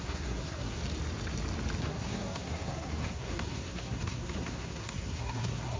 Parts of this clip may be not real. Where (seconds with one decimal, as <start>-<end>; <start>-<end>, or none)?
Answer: 0.0-0.8; 1.8-5.8